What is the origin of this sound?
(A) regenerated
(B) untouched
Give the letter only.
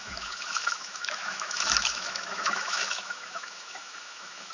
A